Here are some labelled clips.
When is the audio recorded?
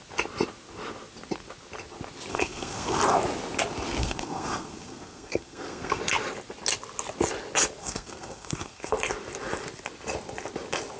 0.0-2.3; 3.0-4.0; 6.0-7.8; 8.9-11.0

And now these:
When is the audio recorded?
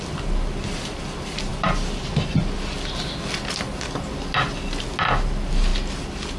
0.0-6.4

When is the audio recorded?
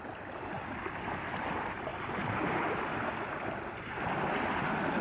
0.0-5.0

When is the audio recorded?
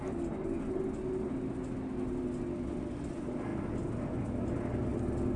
0.0-5.4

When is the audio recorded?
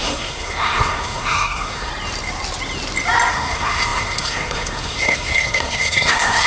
1.9-3.3